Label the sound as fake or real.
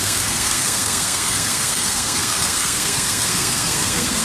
fake